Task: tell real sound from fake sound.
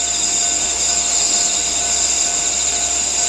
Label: real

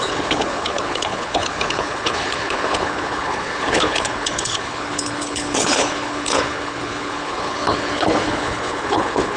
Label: fake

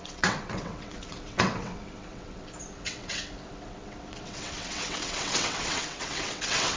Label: fake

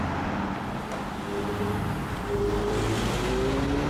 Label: real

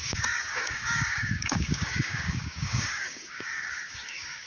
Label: fake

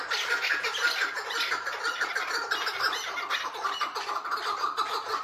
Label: real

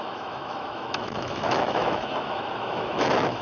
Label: fake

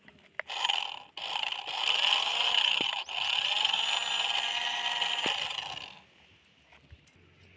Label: real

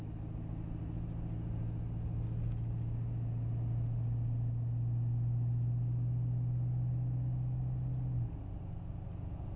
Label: real